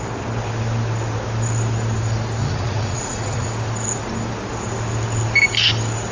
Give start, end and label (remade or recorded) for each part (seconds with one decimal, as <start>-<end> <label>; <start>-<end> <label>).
0.0-2.4 recorded; 2.4-3.5 remade; 3.5-6.1 recorded